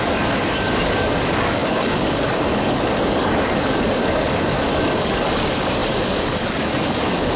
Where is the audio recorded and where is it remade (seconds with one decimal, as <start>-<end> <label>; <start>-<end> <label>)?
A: 0.0-7.4 remade